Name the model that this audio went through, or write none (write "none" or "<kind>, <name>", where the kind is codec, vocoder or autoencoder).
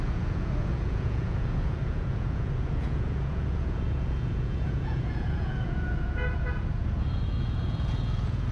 vocoder, Vocos